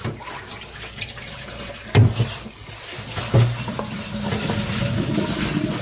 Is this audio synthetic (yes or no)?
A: no